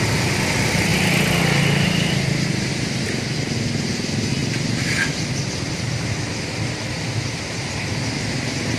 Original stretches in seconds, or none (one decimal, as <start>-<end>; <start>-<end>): 0.0-8.8